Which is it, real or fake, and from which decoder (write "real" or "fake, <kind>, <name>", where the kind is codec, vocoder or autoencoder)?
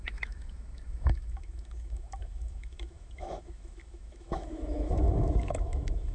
fake, autoencoder, DAC-VAE